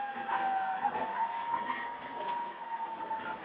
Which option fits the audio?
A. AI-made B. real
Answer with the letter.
A